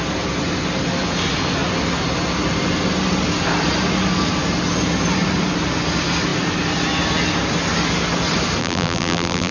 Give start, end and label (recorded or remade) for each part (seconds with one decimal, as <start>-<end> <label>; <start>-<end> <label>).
0.0-8.6 recorded; 8.6-9.5 remade